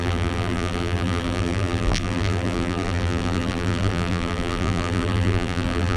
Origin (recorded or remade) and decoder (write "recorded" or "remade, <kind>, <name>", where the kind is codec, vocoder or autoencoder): remade, vocoder, BigVGAN v2